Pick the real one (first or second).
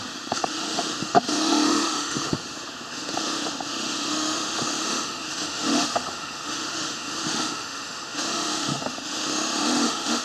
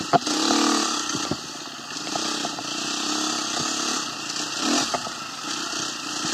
second